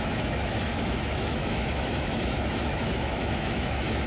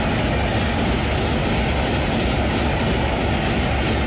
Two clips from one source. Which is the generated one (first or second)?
first